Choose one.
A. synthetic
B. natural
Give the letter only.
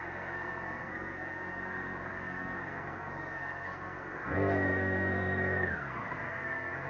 A